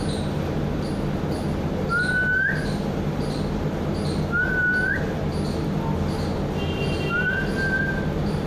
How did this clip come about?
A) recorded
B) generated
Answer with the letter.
A